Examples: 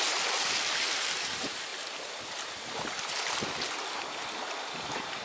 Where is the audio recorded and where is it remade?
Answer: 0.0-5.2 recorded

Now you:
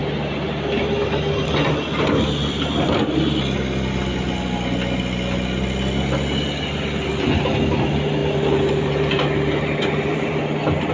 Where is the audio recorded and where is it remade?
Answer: 0.0-1.5 remade; 1.5-8.2 recorded; 8.2-10.4 remade; 10.4-10.9 recorded

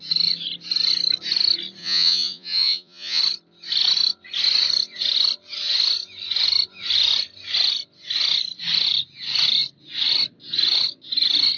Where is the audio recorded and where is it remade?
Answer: 0.0-1.8 recorded; 1.8-3.2 remade; 3.2-11.6 recorded

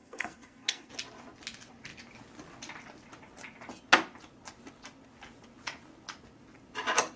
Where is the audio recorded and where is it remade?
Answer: 0.0-0.9 remade; 0.9-7.2 recorded